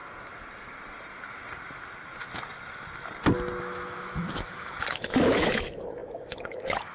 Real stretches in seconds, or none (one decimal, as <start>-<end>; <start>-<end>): 0.0-3.6